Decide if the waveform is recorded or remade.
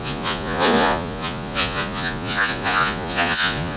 remade